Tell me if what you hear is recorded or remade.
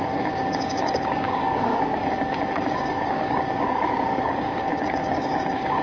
remade